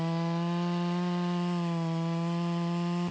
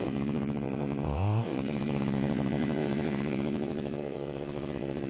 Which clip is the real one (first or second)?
first